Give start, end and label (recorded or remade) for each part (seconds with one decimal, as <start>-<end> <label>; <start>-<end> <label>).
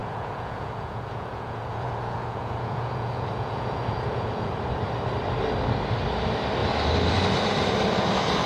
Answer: 0.0-4.5 remade; 4.5-8.5 recorded